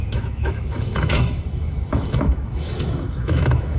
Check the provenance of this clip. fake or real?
fake